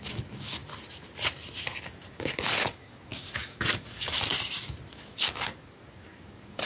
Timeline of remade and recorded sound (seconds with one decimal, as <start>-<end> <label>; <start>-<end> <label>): 0.0-0.6 remade; 0.6-2.1 recorded; 2.1-4.3 remade; 4.3-4.9 recorded; 4.9-6.7 remade